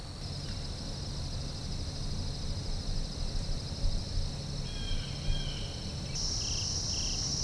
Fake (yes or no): no